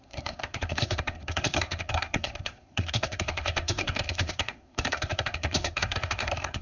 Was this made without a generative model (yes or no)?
no